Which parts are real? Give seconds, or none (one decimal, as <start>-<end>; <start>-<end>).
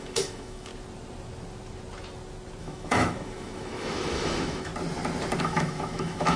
0.7-2.6; 4.7-5.4